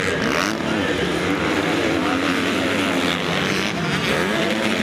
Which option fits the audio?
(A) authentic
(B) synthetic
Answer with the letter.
A